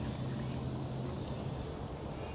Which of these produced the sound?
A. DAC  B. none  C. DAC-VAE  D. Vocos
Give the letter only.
B